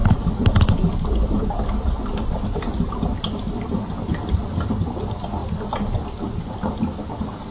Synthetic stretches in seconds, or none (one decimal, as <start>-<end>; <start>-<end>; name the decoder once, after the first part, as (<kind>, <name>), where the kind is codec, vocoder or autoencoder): none